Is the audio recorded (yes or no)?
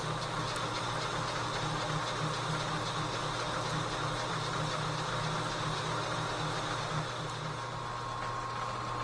yes